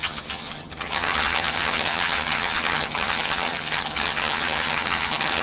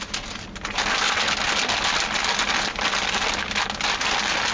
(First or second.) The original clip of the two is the second